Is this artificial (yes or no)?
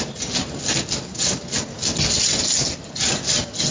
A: no